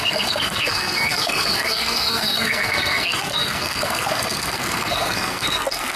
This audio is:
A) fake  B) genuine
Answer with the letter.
A